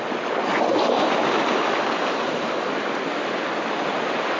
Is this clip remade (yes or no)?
no